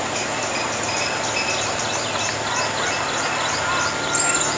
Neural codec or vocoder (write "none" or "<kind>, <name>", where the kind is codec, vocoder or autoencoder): none